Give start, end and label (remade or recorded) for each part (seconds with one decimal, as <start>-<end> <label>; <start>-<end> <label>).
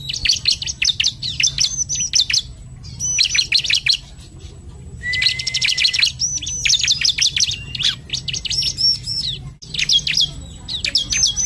0.0-11.5 recorded